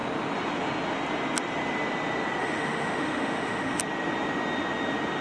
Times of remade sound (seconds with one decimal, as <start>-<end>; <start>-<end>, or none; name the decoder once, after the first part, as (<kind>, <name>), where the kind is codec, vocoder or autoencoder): 2.4-3.8 (autoencoder, DAC-VAE)